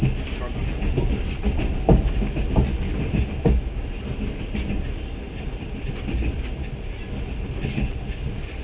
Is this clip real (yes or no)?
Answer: yes